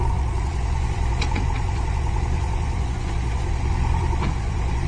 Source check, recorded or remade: remade